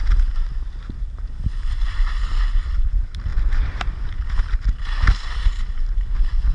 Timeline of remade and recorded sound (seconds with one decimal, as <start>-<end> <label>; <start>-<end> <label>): 0.0-6.5 remade